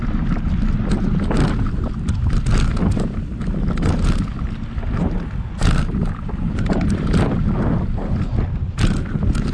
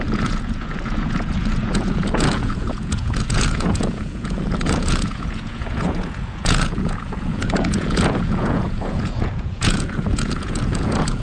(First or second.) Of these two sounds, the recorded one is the first